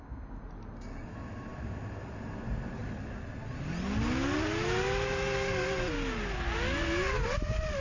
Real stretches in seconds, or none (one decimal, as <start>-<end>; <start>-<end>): 0.0-7.8